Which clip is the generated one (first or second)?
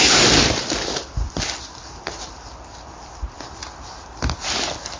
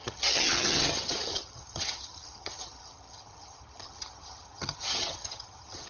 second